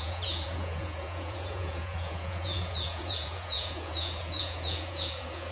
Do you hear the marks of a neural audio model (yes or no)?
yes